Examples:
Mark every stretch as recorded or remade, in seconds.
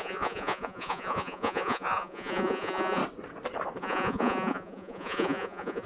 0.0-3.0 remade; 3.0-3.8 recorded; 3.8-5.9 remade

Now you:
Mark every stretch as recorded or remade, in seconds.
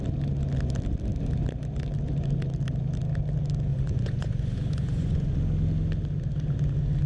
0.0-3.7 recorded; 3.7-5.4 remade; 5.4-7.1 recorded